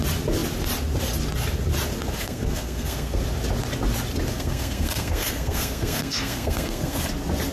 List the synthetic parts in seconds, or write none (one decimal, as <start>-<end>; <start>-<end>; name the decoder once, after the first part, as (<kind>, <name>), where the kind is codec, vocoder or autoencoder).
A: 2.2-3.2 (codec, SNAC); 4.3-7.1

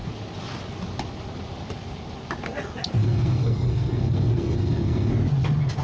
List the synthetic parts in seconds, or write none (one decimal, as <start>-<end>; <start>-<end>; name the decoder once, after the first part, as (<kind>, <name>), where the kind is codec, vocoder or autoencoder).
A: 3.0-5.1 (codec, SNAC)

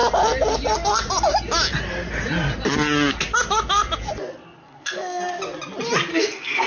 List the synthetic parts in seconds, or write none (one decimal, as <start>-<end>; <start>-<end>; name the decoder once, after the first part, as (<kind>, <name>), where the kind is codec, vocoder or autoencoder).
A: 4.6-5.3 (codec, SNAC); 6.1-6.7

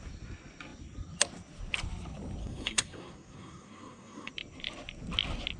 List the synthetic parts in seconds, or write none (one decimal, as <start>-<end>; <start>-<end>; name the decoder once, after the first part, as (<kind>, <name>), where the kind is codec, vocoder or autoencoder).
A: 2.4-4.3 (codec, SNAC)

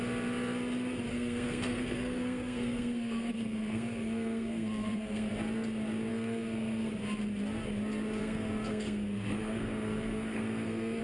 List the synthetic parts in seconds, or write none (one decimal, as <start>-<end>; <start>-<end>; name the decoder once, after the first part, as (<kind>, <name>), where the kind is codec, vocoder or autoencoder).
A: 1.1-5.3 (codec, SNAC); 6.1-6.9; 8.2-11.0